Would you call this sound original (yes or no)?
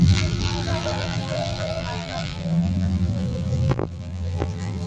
no